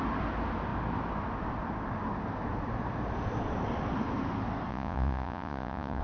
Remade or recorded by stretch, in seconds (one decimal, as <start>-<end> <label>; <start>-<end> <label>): 0.0-4.7 recorded; 4.7-6.0 remade